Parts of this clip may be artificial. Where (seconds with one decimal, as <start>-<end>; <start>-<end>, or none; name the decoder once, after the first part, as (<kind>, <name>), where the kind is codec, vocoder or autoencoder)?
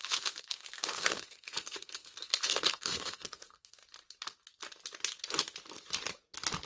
0.0-3.8 (codec, SNAC)